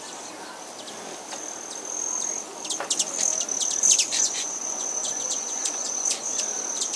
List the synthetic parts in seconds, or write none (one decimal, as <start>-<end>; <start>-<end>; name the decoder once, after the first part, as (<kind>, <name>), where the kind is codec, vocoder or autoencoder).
4.1-6.4 (vocoder, Vocos)